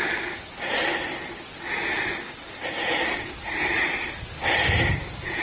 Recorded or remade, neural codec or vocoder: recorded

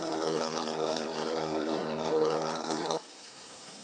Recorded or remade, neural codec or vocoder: remade, codec, SNAC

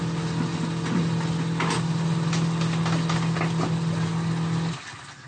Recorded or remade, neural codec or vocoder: recorded